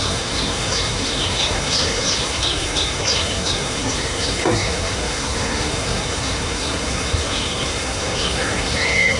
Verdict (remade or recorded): remade